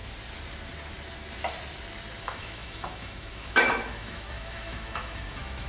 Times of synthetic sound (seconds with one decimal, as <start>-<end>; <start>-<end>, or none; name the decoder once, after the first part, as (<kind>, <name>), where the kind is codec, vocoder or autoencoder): 2.2-5.7 (autoencoder, DAC-VAE)